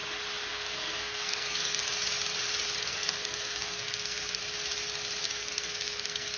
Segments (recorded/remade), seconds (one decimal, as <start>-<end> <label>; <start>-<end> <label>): 0.0-0.5 recorded; 0.5-1.8 remade; 1.8-2.8 recorded; 2.8-4.4 remade; 4.4-5.2 recorded; 5.2-6.4 remade